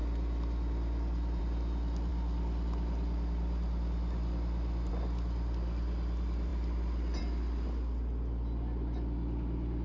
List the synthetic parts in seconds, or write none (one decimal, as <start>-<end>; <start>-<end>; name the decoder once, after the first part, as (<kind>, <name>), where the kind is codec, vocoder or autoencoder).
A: none